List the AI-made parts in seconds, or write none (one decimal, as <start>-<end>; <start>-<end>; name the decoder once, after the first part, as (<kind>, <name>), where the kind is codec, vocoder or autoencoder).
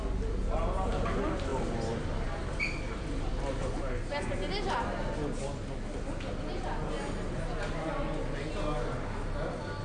none